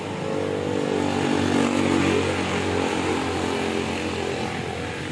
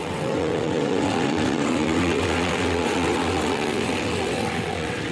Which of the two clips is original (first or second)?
first